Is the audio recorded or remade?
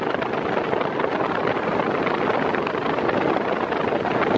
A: recorded